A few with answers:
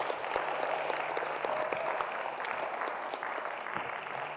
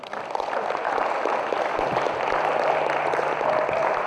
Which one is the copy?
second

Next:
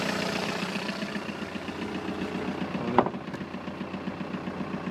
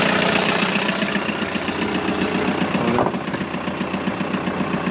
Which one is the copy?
second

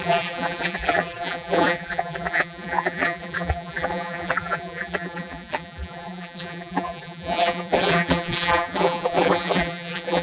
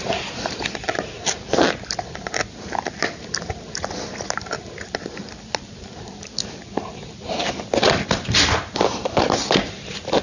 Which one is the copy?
first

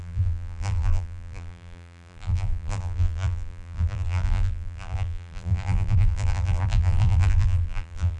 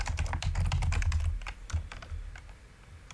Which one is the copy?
first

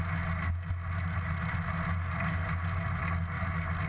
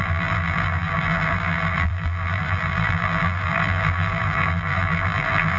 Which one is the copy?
second